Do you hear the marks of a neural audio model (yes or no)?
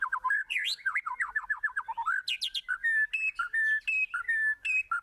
no